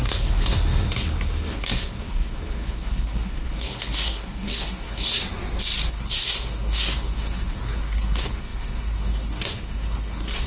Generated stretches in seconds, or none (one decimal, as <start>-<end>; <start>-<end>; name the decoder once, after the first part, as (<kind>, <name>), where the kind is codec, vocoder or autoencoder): 0.0-5.2 (codec, SNAC); 5.9-10.5